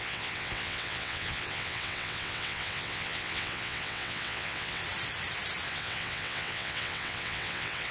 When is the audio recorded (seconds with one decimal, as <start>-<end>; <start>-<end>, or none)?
4.8-5.7